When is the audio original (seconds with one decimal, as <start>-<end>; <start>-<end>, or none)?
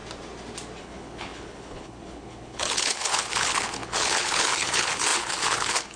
0.0-0.8